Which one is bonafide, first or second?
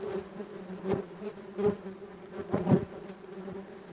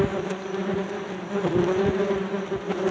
second